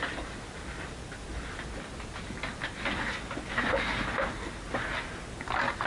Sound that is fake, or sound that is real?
real